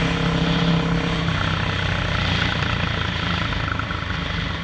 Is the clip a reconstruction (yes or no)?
no